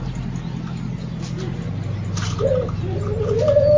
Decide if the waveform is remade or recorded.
recorded